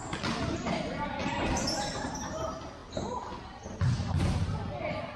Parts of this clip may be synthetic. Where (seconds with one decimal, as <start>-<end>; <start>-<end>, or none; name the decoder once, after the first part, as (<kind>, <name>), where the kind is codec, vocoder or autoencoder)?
1.2-2.4 (vocoder, BigVGAN v2)